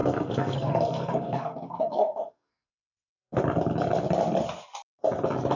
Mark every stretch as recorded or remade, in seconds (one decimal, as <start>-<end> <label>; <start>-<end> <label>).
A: 0.0-3.4 remade; 3.4-5.6 recorded